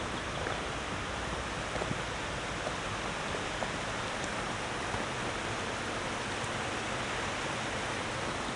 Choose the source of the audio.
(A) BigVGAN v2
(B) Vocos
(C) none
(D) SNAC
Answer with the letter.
C